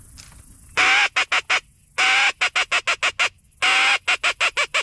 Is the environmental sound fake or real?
real